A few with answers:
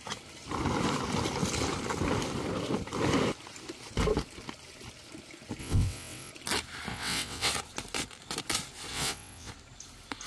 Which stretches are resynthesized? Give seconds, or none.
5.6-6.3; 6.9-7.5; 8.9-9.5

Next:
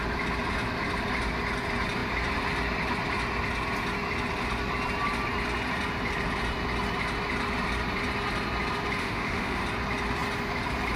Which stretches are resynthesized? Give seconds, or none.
9.0-9.6

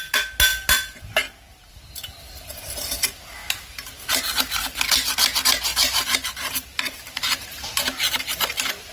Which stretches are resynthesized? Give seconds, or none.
5.7-8.9

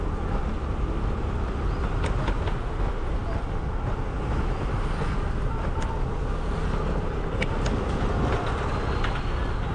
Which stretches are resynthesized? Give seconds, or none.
none

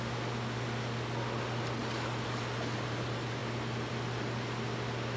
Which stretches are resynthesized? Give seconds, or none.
none

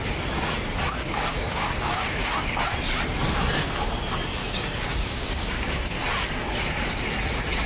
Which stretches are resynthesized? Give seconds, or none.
1.0-2.6; 4.4-5.9

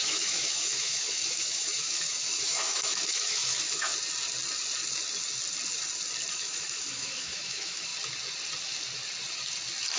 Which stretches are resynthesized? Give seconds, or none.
0.0-3.9; 6.3-7.9